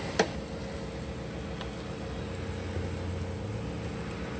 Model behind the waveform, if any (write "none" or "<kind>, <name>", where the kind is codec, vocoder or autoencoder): none